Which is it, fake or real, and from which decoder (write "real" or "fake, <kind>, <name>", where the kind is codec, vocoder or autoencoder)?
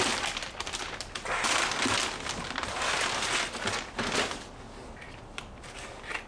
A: real